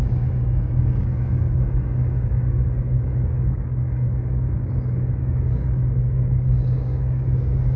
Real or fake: fake